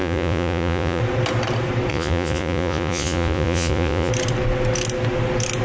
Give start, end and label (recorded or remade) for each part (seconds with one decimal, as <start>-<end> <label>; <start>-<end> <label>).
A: 0.0-1.0 remade; 1.0-1.9 recorded; 1.9-4.1 remade; 4.1-5.6 recorded